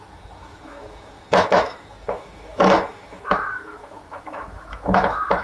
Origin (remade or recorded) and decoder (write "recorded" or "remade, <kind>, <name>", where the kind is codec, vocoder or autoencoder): remade, autoencoder, DAC-VAE